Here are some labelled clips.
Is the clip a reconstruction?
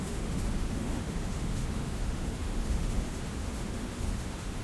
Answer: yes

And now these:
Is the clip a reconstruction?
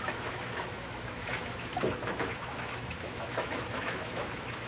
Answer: yes